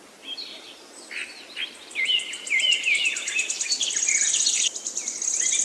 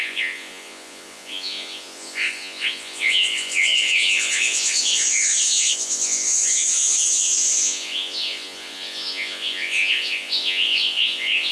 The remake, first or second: second